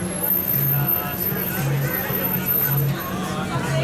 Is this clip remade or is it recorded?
recorded